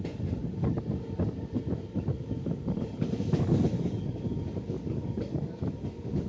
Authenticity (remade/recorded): remade